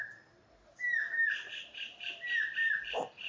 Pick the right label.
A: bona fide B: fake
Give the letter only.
A